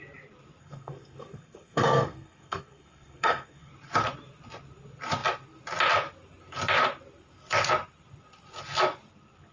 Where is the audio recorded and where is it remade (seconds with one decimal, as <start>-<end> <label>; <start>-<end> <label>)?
0.0-0.6 recorded; 0.6-3.7 remade; 3.7-9.5 recorded